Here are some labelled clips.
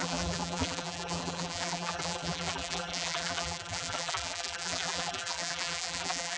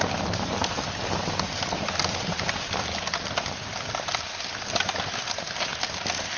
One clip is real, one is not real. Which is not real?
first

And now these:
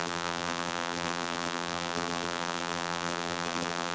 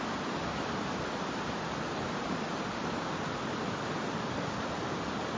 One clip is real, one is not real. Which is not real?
first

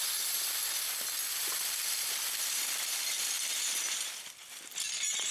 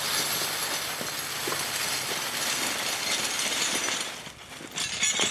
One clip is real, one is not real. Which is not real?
first